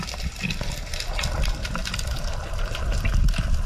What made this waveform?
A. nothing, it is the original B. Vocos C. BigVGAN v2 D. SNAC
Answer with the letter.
A